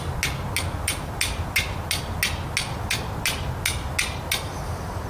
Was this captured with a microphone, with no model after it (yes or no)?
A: yes